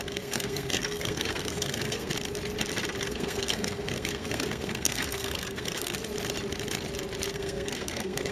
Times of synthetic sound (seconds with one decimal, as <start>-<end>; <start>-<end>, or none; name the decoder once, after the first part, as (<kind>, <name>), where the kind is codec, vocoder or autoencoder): 0.0-2.1 (codec, SNAC); 3.0-6.0; 7.3-8.3